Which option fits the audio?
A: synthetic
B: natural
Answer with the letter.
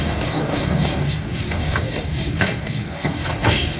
A